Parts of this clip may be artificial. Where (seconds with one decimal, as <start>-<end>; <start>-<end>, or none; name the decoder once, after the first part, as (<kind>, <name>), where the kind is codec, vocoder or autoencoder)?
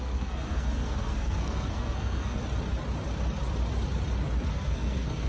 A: 0.0-2.4 (codec, SNAC); 4.5-5.3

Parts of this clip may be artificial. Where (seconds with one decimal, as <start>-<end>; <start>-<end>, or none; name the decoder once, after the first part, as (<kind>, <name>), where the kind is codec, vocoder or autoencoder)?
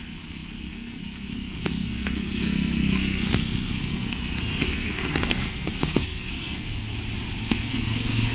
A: 0.0-6.9 (codec, SNAC); 7.4-8.3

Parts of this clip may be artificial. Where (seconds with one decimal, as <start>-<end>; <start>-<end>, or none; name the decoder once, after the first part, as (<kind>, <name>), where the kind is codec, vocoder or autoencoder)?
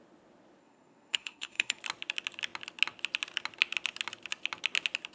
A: 0.6-1.8 (codec, SNAC)